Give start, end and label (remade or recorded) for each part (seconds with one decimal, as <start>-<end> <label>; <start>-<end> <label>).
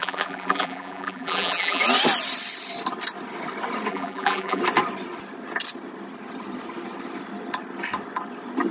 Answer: 0.0-1.8 remade; 1.8-3.9 recorded; 3.9-4.6 remade; 4.6-8.7 recorded